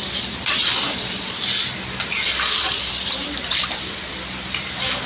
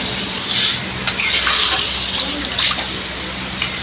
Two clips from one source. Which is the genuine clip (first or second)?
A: second